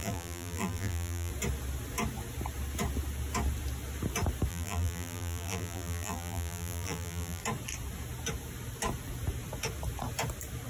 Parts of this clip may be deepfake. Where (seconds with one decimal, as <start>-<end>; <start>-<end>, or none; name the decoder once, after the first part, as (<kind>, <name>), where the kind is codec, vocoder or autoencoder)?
0.0-1.3 (vocoder, BigVGAN v2); 4.5-7.4